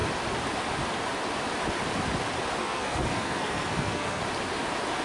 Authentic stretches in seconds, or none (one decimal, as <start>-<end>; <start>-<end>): 0.0-2.6; 4.2-5.0